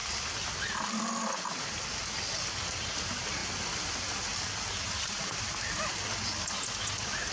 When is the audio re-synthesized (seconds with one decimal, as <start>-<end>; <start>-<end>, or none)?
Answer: none